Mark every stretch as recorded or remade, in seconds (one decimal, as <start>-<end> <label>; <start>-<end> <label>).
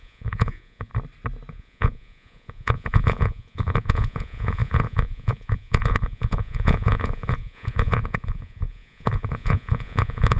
0.0-0.9 remade; 0.9-1.5 recorded; 1.5-10.4 remade